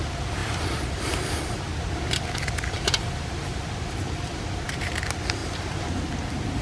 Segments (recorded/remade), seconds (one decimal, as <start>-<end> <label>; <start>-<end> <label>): 0.0-0.4 recorded; 0.4-4.4 remade; 4.4-6.6 recorded